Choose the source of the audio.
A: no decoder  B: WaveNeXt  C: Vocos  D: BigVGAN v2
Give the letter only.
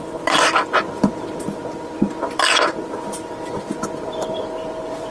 D